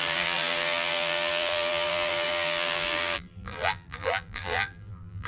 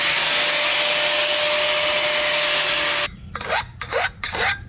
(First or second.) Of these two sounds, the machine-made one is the first